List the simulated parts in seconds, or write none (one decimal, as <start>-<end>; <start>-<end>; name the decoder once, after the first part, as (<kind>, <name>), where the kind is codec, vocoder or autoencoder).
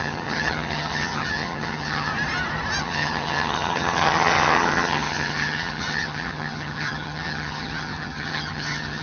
0.0-2.1 (vocoder, HiFi-GAN); 2.8-9.0